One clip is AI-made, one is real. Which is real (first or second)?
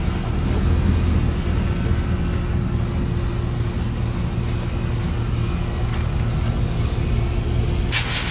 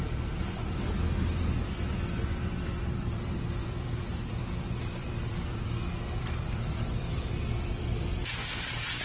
first